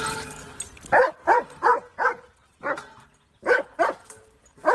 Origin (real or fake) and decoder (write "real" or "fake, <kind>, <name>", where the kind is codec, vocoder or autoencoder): real